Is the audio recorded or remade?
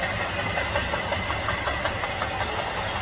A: recorded